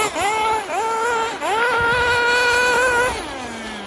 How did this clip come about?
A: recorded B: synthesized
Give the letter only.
A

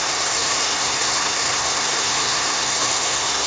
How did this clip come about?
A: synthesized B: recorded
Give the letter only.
A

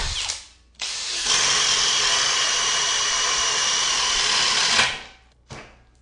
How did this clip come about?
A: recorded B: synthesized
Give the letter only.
A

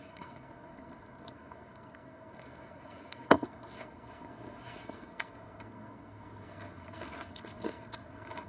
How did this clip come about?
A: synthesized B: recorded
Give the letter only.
A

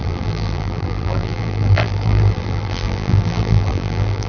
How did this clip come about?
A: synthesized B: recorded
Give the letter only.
A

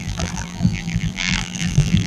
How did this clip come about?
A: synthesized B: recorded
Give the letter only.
A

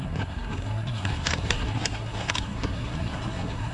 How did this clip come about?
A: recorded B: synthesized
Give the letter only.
B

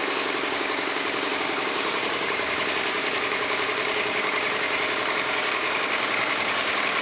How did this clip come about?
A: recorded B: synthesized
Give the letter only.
B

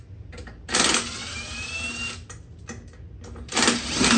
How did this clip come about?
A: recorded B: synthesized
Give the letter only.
A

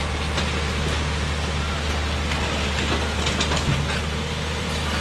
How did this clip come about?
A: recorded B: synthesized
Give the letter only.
A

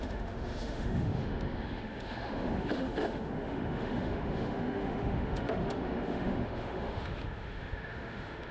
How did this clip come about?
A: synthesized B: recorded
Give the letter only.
A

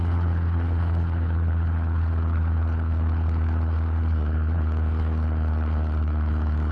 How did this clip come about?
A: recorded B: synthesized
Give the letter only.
B